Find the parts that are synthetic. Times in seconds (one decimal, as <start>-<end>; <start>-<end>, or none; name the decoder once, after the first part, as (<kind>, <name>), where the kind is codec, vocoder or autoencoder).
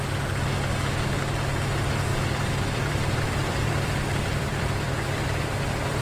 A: 2.1-6.0 (vocoder, BigVGAN v2)